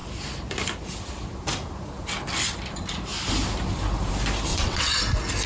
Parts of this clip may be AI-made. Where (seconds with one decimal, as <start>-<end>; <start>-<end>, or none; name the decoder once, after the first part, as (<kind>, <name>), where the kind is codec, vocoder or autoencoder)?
4.5-5.0 (vocoder, WaveNeXt)